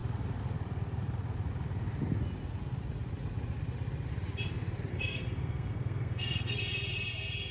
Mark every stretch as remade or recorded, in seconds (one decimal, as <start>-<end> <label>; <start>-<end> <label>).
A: 0.0-4.9 recorded; 4.9-6.6 remade; 6.6-7.5 recorded